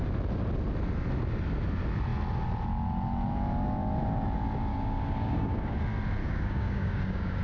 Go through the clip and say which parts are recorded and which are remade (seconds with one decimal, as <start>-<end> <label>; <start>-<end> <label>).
0.0-4.7 recorded; 4.7-5.7 remade; 5.7-6.2 recorded; 6.2-7.4 remade